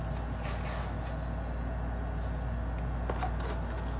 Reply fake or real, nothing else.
real